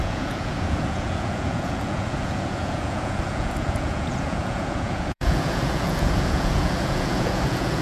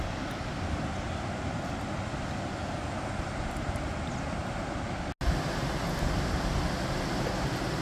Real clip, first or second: second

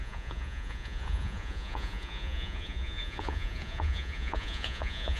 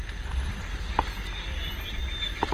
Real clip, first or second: second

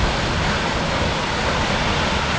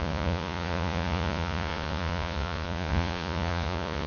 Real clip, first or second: first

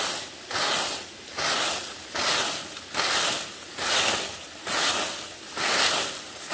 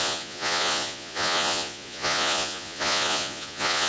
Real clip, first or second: first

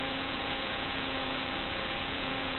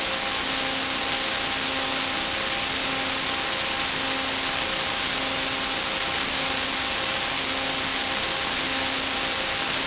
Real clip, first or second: second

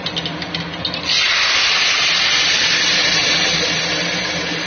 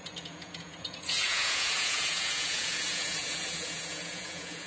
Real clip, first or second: first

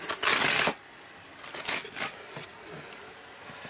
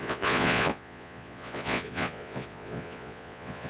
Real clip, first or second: first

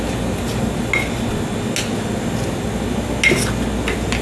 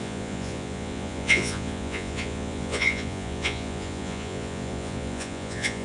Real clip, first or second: first